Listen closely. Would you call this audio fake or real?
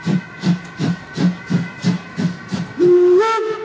real